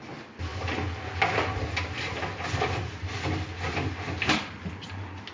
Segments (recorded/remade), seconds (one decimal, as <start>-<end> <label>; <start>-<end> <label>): 0.0-5.3 recorded